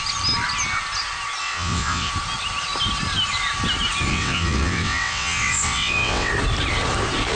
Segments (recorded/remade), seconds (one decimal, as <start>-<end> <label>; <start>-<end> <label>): 0.0-1.4 recorded; 1.4-2.1 remade; 2.1-4.1 recorded; 4.1-6.3 remade; 6.3-7.4 recorded